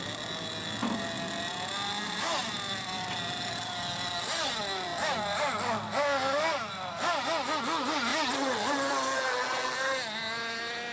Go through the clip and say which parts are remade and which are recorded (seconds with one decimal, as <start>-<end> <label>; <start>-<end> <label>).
0.0-10.9 recorded